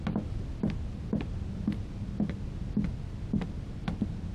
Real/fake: real